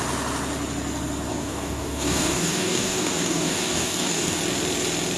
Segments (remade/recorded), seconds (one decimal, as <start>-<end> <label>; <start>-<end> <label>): 0.0-1.3 recorded; 1.3-4.4 remade; 4.4-5.2 recorded